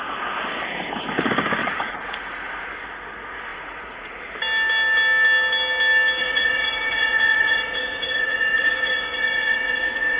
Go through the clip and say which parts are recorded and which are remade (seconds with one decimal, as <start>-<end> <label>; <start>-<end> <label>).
0.0-1.6 recorded; 1.6-2.6 remade; 2.6-3.5 recorded; 3.5-4.2 remade; 4.2-6.2 recorded; 6.2-10.2 remade